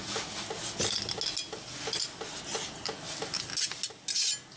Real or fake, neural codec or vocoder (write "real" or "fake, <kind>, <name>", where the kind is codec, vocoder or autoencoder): real